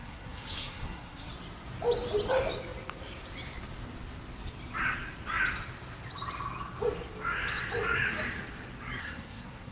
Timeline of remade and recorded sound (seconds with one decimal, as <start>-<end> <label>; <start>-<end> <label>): 0.0-1.3 remade; 1.3-9.0 recorded; 9.0-9.7 remade